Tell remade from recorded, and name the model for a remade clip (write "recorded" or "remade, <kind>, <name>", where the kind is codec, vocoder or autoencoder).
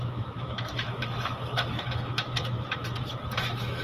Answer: remade, autoencoder, DAC-VAE